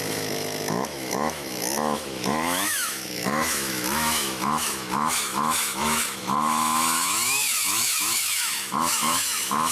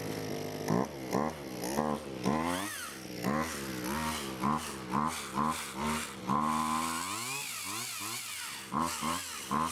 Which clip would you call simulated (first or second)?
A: first